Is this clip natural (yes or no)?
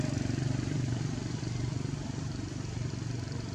no